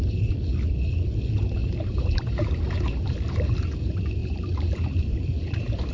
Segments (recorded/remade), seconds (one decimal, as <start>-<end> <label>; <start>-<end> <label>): 0.0-1.6 recorded; 1.6-3.8 remade; 3.8-4.2 recorded; 4.2-5.9 remade